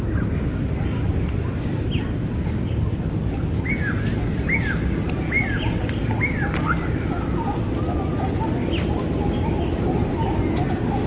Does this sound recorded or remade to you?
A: recorded